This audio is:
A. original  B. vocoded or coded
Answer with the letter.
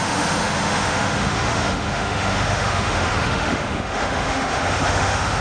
B